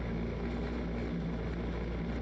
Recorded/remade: recorded